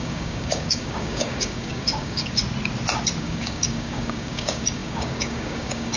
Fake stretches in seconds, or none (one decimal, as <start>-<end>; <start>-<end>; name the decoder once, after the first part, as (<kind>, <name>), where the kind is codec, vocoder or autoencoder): 0.0-2.4 (codec, DAC); 3.2-6.0